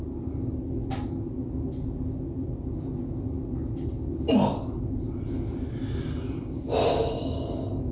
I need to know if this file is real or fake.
real